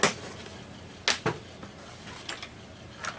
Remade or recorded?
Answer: recorded